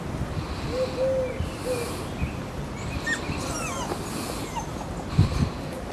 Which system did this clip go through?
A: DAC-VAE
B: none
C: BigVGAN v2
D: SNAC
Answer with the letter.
B